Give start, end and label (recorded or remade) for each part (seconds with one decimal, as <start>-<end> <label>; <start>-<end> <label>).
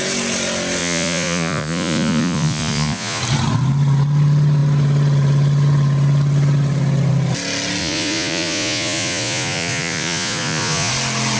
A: 0.0-0.8 recorded; 0.8-3.2 remade; 3.2-7.8 recorded; 7.8-10.9 remade; 10.9-11.4 recorded